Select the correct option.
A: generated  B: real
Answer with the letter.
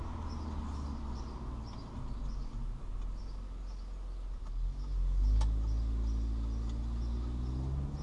B